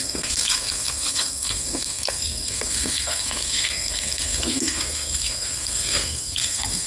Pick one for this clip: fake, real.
fake